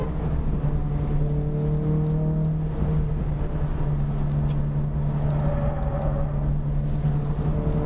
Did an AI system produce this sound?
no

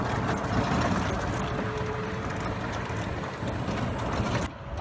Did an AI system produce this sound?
no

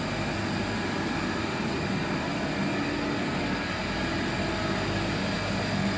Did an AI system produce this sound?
no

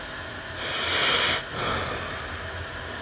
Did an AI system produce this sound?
no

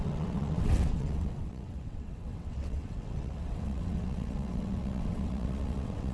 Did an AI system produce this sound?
yes